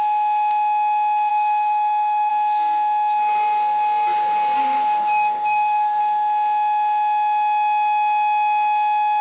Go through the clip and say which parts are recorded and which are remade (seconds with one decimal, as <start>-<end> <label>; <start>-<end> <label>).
0.0-1.3 recorded; 1.3-2.3 remade; 2.3-4.6 recorded; 4.6-6.0 remade; 6.0-9.2 recorded